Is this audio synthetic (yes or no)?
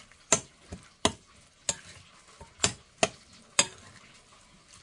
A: no